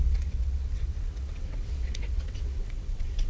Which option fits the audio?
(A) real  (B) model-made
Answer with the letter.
B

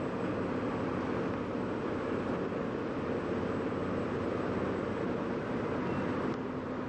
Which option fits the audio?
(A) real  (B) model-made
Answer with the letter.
A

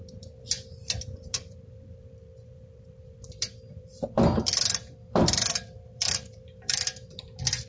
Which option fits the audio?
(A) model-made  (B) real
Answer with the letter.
A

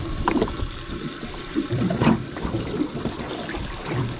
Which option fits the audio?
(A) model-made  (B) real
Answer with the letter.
A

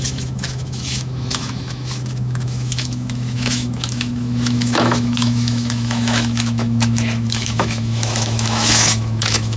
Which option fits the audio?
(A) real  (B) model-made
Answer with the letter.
B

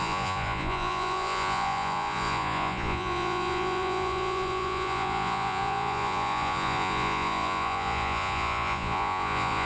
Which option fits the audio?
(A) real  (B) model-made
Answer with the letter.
B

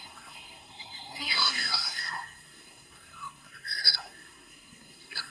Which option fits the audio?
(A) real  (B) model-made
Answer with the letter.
B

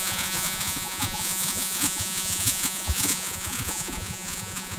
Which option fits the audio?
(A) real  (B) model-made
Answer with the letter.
B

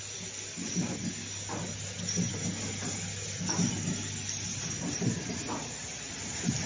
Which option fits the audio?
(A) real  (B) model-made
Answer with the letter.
A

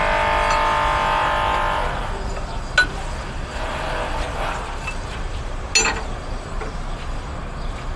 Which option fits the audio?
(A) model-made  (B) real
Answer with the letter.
B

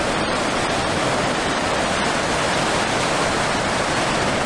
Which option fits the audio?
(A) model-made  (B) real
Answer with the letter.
A